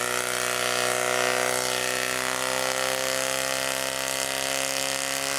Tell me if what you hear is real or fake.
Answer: real